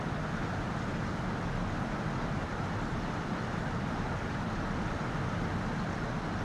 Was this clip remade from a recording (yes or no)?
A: no